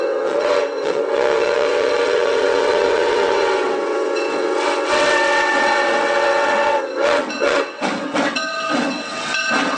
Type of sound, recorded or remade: remade